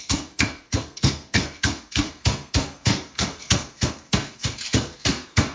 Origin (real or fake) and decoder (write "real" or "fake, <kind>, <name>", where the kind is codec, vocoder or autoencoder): fake, codec, SNAC